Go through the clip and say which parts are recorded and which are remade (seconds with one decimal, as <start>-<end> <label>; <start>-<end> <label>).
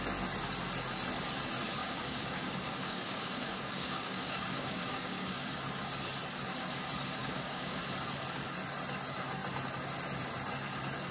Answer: 0.0-1.8 recorded; 1.8-5.5 remade; 5.5-7.2 recorded; 7.2-7.8 remade; 7.8-11.1 recorded